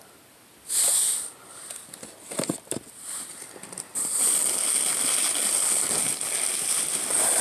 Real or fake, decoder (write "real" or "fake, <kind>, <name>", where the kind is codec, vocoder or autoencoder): real